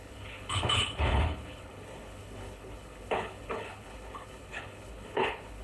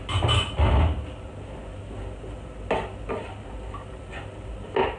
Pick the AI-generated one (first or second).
first